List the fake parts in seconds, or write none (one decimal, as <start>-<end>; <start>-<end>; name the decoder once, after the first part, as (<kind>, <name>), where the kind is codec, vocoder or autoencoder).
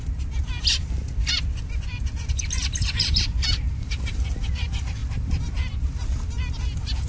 2.8-3.3 (vocoder, BigVGAN v2); 5.0-5.7